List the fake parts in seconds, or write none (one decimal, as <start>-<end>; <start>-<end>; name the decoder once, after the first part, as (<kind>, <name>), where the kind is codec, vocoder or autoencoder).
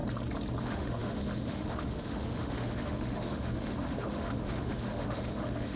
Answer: 0.6-5.8 (autoencoder, DAC-VAE)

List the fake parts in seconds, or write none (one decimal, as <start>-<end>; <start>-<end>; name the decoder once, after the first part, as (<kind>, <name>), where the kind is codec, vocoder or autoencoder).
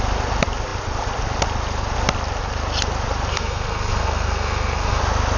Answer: 3.3-5.0 (codec, SNAC)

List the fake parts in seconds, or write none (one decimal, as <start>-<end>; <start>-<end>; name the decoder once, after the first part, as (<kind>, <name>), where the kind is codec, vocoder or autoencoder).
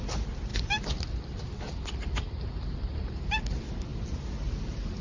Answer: none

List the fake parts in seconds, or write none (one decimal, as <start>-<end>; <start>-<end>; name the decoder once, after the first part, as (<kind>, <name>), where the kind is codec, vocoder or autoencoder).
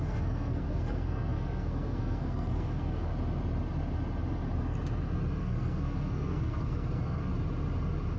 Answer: 0.0-3.1 (codec, SNAC); 5.4-7.3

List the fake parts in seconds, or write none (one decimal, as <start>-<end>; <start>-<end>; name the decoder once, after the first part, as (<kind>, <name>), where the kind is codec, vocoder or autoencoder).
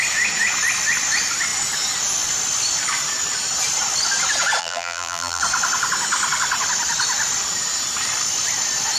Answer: 4.6-5.4 (vocoder, BigVGAN v2)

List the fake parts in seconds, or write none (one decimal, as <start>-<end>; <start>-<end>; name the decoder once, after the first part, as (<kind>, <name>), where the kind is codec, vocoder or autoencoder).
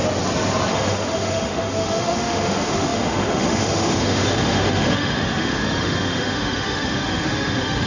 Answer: 0.7-7.9 (autoencoder, DAC-VAE)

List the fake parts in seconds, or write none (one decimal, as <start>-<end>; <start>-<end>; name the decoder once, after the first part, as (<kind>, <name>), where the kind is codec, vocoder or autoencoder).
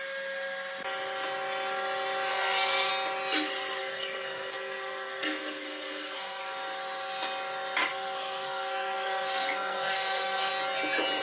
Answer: 2.3-2.9 (codec, SNAC); 3.8-6.4; 7.9-10.5